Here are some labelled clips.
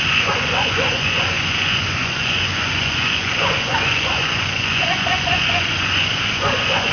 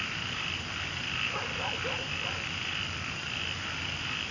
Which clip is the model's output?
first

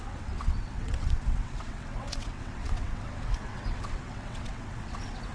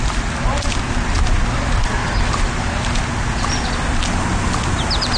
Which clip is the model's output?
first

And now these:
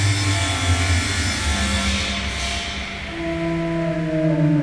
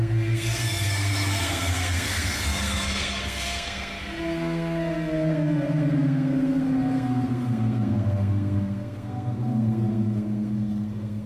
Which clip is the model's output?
second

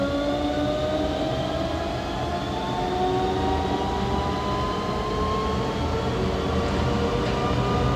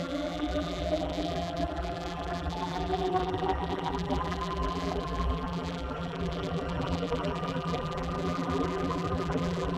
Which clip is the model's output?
second